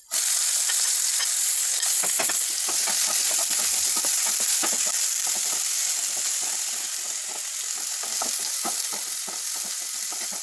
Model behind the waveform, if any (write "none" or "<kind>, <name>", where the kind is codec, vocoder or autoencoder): none